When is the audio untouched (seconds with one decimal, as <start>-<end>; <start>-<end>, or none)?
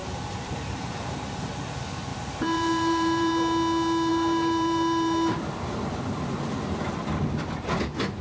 1.5-2.1; 3.3-4.1; 5.7-8.2